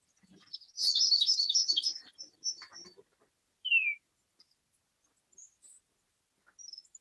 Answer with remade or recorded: recorded